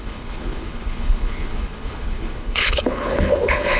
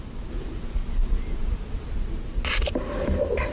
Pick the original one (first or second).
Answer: second